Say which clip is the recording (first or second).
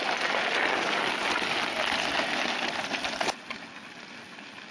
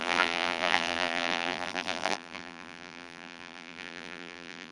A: first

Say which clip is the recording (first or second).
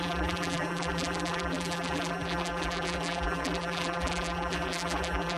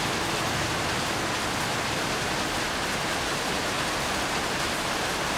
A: second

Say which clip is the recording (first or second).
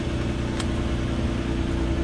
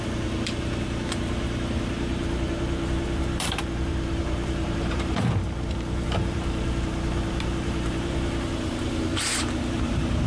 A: first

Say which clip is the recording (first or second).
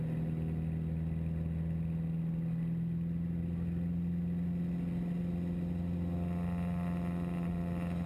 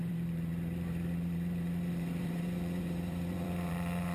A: first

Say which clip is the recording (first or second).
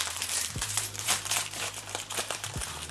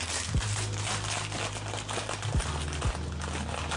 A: second